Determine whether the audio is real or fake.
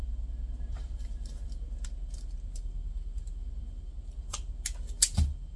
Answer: real